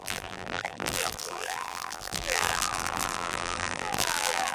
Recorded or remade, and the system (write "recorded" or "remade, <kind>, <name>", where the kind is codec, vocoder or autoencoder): remade, vocoder, BigVGAN v2